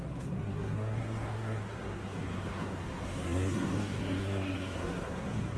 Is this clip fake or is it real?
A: fake